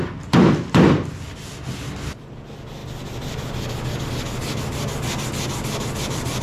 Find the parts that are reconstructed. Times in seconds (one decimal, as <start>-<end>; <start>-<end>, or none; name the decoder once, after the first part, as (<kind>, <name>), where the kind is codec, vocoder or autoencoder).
none